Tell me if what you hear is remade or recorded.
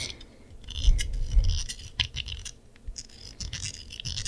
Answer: recorded